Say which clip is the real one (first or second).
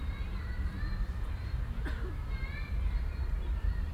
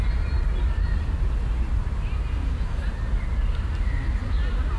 second